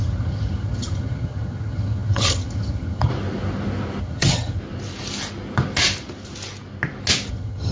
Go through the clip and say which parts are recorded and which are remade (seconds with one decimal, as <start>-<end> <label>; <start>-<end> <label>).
0.0-3.1 remade; 3.1-4.0 recorded; 4.0-4.6 remade; 4.6-7.3 recorded; 7.3-7.7 remade